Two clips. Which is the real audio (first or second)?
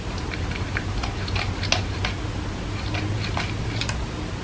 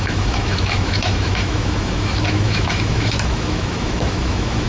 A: first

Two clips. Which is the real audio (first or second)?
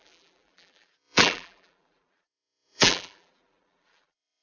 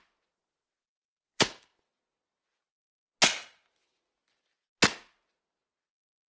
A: second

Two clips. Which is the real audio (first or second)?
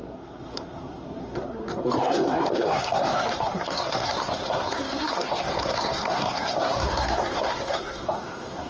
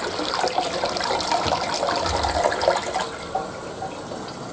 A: second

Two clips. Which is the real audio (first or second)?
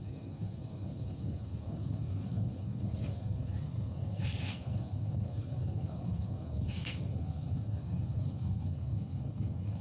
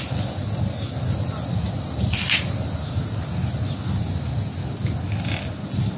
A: second